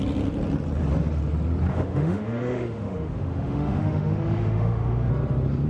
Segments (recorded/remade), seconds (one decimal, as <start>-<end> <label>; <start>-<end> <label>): 0.0-1.7 recorded; 1.7-5.1 remade; 5.1-5.7 recorded